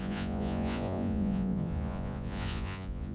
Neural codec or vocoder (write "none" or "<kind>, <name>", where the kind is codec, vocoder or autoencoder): vocoder, Vocos